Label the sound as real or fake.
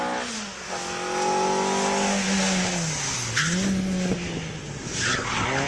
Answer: real